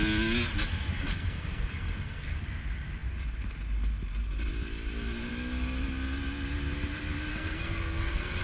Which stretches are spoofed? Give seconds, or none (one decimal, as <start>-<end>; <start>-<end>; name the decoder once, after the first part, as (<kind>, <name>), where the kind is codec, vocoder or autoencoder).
1.1-2.4 (codec, SNAC); 7.3-8.4

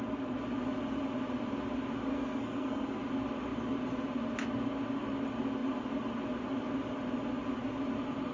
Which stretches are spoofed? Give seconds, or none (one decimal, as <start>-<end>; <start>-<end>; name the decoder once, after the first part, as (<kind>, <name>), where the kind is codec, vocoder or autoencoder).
2.1-3.0 (codec, SNAC)

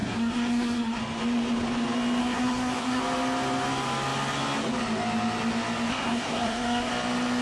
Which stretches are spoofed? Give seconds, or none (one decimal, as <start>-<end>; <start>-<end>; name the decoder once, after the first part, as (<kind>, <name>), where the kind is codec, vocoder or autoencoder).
0.0-1.0 (codec, SNAC); 2.2-3.0; 5.9-6.9